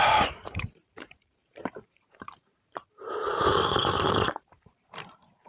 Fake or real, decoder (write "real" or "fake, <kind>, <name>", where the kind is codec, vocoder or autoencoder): fake, vocoder, BigVGAN v2